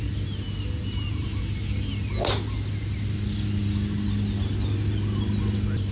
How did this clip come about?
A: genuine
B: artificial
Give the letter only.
A